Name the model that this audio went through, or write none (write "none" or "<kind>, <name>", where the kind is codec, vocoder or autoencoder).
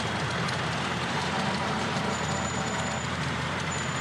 vocoder, BigVGAN v2